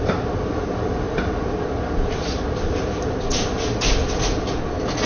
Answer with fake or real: real